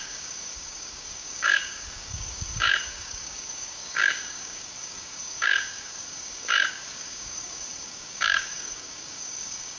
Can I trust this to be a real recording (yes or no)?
no